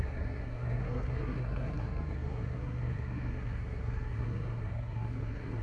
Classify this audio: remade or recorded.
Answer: remade